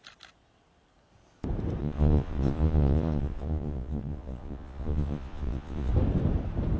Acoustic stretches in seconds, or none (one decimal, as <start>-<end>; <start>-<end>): 0.0-1.8; 5.9-6.8